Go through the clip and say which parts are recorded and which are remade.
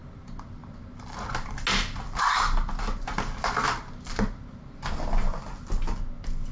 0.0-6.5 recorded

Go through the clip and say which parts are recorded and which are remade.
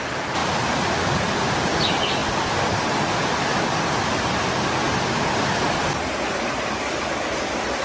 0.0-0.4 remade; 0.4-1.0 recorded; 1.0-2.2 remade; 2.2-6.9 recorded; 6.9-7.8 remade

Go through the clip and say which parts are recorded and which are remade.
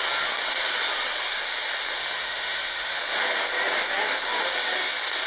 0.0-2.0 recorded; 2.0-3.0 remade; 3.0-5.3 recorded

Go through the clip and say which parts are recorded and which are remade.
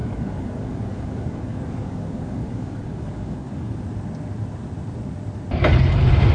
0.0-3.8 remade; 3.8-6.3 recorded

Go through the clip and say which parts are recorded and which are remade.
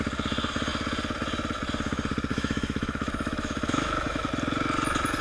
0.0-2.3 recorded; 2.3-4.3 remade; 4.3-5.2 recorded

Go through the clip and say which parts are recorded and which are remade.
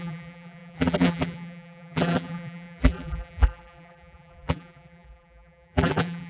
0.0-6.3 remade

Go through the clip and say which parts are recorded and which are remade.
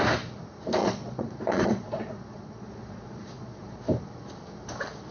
0.0-0.8 recorded; 0.8-3.8 remade; 3.8-5.1 recorded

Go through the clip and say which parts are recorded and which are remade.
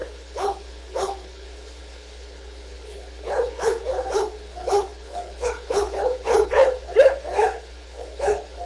0.0-8.7 remade